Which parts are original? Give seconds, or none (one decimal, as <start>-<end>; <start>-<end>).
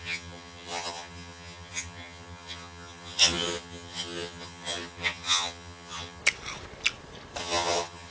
6.2-7.4